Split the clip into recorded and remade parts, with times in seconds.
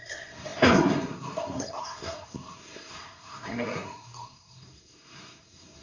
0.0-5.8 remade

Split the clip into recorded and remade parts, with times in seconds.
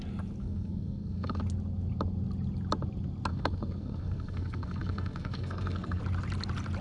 0.0-0.4 recorded; 0.4-1.4 remade; 1.4-3.3 recorded; 3.3-6.0 remade; 6.0-6.8 recorded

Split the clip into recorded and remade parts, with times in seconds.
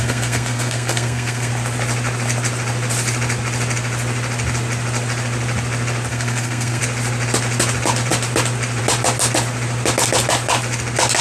0.0-1.5 remade; 1.5-6.1 recorded; 6.1-6.8 remade; 6.8-11.2 recorded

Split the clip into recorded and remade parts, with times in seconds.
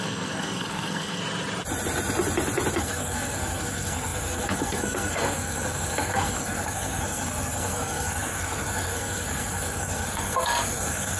0.0-1.2 remade; 1.2-2.8 recorded; 2.8-11.2 remade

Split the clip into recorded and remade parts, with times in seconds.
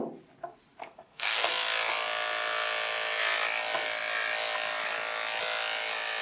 0.0-0.8 recorded; 0.8-1.5 remade; 1.5-6.2 recorded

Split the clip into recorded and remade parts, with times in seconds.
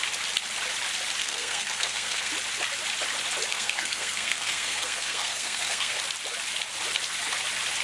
0.0-1.2 recorded; 1.2-2.3 remade; 2.3-3.5 recorded; 3.5-6.0 remade; 6.0-7.8 recorded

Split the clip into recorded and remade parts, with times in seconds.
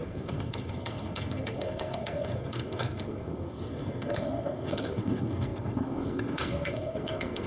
0.0-7.5 remade